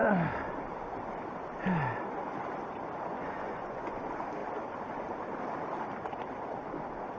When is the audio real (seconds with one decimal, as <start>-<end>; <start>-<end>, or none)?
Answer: 0.0-3.1; 4.0-7.2